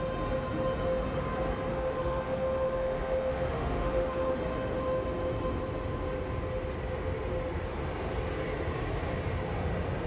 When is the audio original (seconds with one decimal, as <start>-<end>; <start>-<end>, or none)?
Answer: 0.0-1.7; 4.4-10.1